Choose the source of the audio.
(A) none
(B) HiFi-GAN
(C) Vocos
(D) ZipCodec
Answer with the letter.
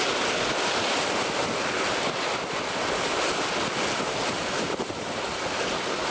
A